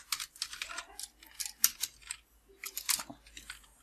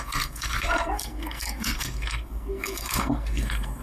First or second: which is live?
first